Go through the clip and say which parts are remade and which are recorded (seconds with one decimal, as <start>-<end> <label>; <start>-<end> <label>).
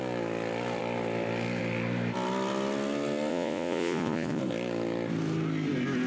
0.0-3.3 recorded; 3.3-4.4 remade; 4.4-6.1 recorded